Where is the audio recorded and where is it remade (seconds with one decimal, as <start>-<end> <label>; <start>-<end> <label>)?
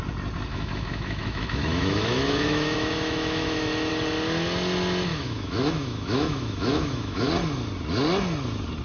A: 0.0-0.5 recorded; 0.5-3.9 remade; 3.9-5.1 recorded; 5.1-7.3 remade; 7.3-8.8 recorded